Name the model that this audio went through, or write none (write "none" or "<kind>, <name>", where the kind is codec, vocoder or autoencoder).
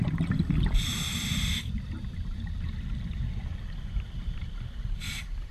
none